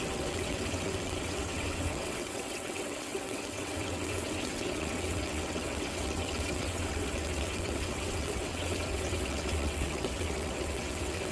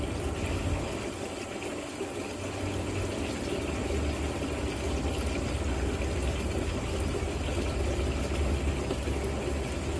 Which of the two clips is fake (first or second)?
first